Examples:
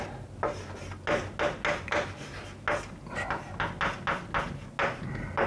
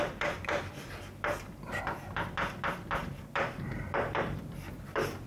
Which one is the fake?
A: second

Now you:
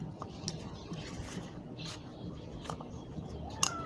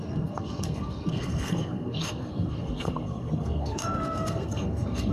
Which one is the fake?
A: second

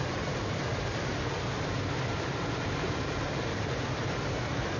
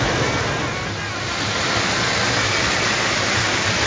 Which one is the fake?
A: first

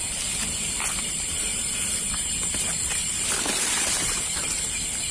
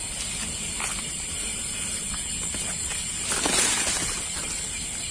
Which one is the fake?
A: first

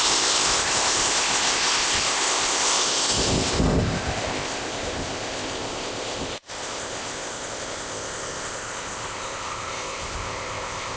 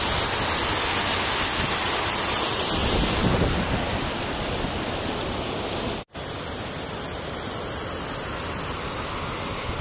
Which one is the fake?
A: first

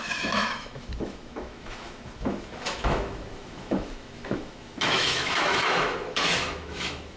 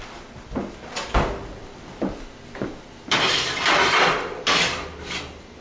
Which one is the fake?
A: first